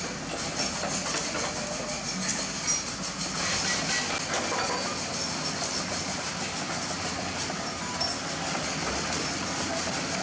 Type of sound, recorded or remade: recorded